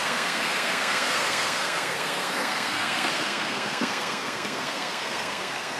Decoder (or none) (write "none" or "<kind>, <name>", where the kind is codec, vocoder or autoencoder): codec, SNAC